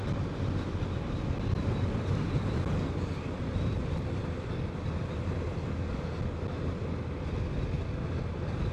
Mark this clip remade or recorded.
recorded